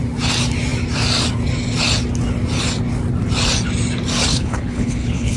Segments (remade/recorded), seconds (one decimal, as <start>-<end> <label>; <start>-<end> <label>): 0.0-4.3 recorded; 4.3-5.4 remade